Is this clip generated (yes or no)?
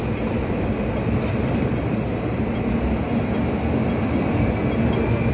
no